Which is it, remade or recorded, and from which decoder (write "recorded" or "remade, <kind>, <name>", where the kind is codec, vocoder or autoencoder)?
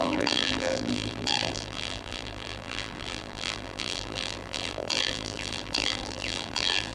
remade, vocoder, BigVGAN v2